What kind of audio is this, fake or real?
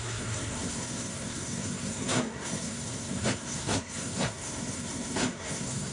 fake